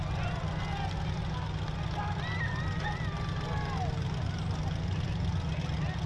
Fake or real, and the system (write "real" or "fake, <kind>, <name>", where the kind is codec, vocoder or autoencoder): real